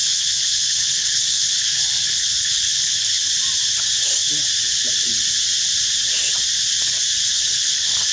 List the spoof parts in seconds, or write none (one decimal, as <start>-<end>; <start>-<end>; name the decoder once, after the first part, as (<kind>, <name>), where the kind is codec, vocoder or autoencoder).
0.0-3.3 (codec, HILCodec); 7.3-8.1